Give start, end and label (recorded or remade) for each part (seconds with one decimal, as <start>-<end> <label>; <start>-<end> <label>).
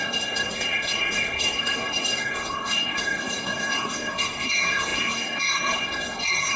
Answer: 0.0-6.6 remade